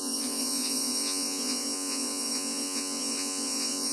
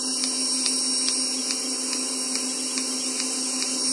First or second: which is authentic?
second